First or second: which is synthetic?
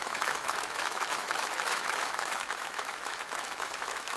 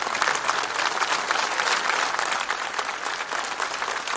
first